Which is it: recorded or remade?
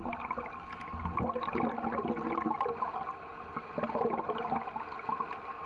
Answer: recorded